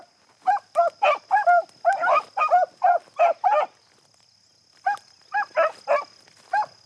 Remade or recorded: recorded